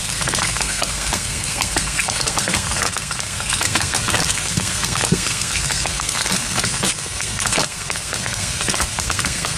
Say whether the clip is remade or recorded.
remade